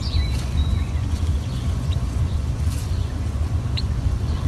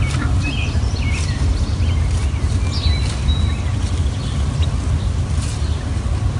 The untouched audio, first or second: second